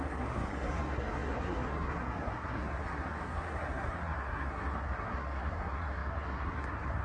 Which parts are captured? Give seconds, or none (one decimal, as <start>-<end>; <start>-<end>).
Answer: none